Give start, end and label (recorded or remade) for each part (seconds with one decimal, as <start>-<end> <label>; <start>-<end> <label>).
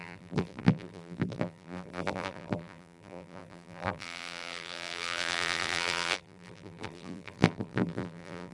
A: 0.0-8.5 remade